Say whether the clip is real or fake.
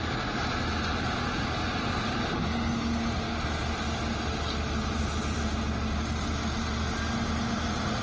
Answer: real